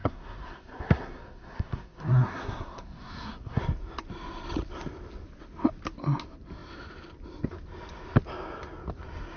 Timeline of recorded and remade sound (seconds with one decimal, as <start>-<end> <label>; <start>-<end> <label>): 0.0-3.6 remade; 3.6-9.4 recorded